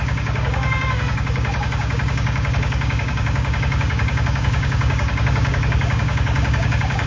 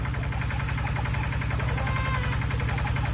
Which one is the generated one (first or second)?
first